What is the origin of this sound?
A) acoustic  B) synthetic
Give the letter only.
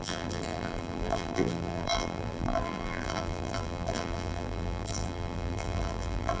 B